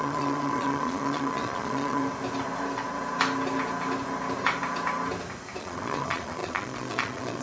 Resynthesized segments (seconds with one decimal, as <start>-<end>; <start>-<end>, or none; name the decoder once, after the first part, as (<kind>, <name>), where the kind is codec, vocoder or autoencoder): 0.0-2.0 (vocoder, Vocos); 5.6-7.4